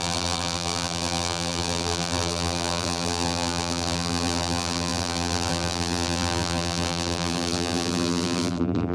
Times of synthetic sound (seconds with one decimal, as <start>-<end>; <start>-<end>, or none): 0.0-8.9